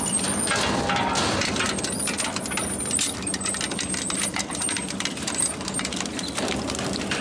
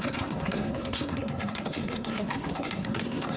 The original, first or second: first